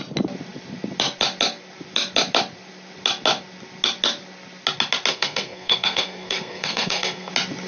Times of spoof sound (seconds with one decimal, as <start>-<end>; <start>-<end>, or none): 5.1-7.3